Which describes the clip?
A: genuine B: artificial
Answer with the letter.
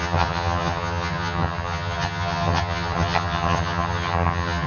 B